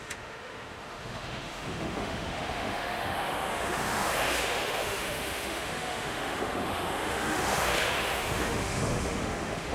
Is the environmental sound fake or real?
fake